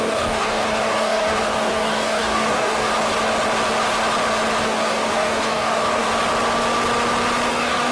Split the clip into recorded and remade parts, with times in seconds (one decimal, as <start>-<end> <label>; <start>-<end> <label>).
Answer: 0.0-2.9 remade; 2.9-4.6 recorded; 4.6-6.1 remade; 6.1-7.5 recorded; 7.5-7.9 remade